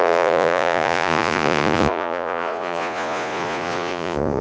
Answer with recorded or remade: remade